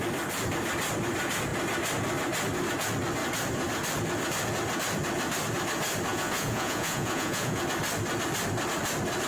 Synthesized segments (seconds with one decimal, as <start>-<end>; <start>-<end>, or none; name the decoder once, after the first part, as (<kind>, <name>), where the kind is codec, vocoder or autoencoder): 6.1-7.6 (vocoder, Vocos)